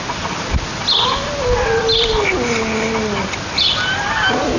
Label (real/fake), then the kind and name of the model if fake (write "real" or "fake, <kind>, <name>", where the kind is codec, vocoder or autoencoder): real